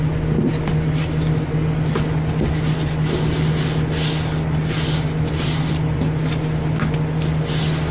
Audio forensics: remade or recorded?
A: recorded